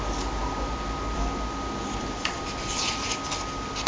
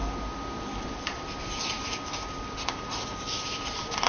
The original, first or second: first